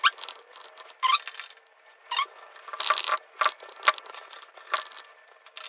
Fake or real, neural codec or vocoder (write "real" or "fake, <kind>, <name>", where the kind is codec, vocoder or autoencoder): real